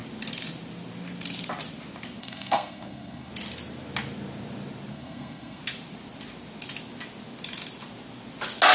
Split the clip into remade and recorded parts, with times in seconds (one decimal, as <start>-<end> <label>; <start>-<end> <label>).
0.0-2.2 recorded; 2.2-3.3 remade; 3.3-4.9 recorded; 4.9-5.6 remade; 5.6-8.7 recorded